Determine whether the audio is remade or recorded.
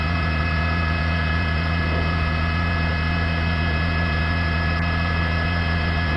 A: recorded